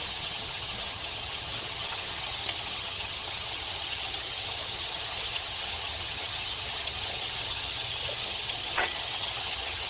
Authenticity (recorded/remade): remade